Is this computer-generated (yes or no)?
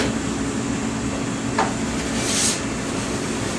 no